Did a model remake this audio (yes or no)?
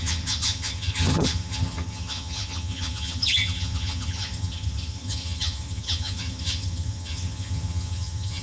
yes